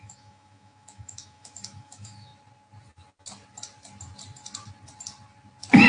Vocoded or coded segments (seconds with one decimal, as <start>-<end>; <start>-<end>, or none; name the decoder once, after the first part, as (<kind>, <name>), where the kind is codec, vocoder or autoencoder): 0.0-2.3 (autoencoder, DAC-VAE)